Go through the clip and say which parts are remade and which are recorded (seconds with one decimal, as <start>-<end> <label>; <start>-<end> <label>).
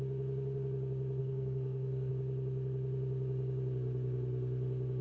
0.0-1.2 recorded; 1.2-2.1 remade; 2.1-5.0 recorded